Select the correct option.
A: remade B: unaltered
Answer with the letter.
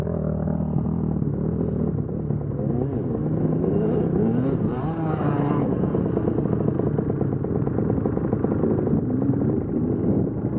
B